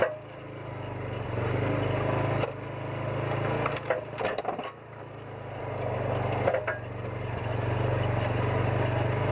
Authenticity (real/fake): real